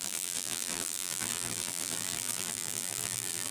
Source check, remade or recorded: remade